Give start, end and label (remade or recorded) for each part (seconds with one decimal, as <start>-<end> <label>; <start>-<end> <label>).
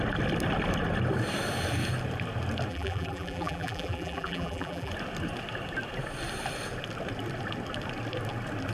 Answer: 0.0-2.7 recorded; 2.7-4.9 remade; 4.9-8.7 recorded